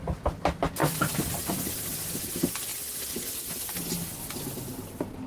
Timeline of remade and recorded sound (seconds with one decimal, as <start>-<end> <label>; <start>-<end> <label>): 0.0-5.3 recorded